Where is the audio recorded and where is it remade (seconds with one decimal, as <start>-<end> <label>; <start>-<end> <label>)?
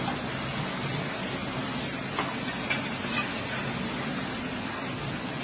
0.0-5.4 recorded